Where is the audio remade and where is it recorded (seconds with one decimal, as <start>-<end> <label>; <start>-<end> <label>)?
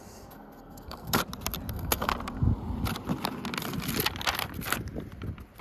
0.0-1.2 remade; 1.2-1.7 recorded; 1.7-2.1 remade; 2.1-5.6 recorded